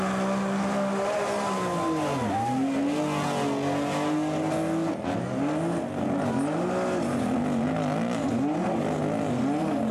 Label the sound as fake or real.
real